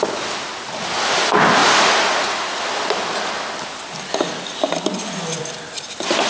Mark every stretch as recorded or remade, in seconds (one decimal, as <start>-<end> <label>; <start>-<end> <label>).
0.0-1.6 recorded; 1.6-2.6 remade; 2.6-6.3 recorded